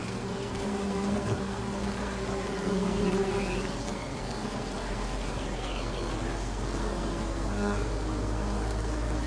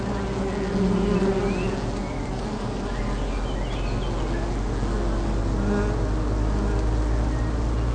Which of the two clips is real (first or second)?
second